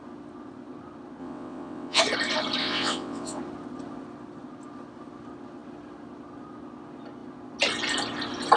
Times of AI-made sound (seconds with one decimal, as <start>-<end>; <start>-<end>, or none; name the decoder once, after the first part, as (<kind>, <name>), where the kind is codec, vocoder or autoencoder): 1.2-2.0 (vocoder, WaveNeXt); 2.6-3.4